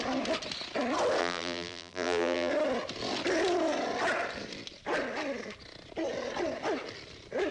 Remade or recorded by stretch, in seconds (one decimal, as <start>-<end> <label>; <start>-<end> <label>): 0.0-1.2 recorded; 1.2-2.5 remade; 2.5-7.5 recorded